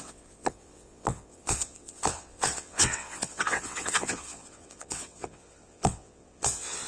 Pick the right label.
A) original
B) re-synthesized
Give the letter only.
B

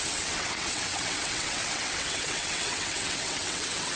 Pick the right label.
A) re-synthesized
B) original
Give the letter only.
A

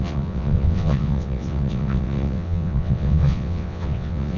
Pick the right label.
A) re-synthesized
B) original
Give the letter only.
A